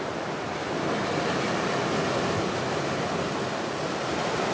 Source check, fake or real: real